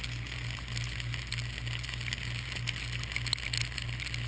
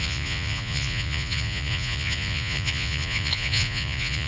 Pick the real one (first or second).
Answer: first